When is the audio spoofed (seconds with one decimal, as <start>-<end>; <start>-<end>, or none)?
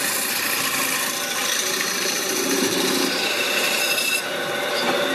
1.4-4.5